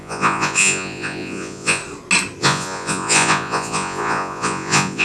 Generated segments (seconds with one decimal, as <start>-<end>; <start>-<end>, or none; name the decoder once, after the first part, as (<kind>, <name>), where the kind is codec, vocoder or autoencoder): 0.0-1.8 (vocoder, Vocos); 2.4-5.0